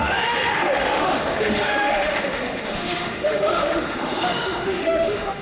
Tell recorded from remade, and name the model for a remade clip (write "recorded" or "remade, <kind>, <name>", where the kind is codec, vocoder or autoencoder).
remade, autoencoder, DAC-VAE